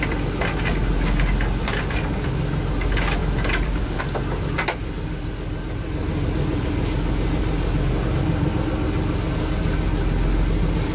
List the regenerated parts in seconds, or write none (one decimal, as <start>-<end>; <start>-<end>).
3.2-4.0